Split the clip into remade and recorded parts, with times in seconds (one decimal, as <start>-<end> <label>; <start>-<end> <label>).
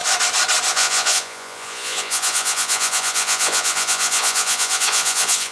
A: 0.0-0.7 recorded; 0.7-5.5 remade